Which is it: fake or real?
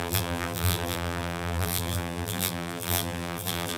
fake